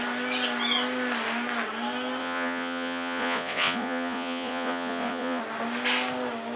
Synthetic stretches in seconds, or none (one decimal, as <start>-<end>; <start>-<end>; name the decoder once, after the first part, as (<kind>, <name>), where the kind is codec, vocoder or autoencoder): 2.2-5.4 (vocoder, Vocos)